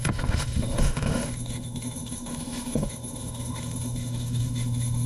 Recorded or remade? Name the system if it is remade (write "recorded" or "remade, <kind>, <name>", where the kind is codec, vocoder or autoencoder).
remade, autoencoder, DAC-VAE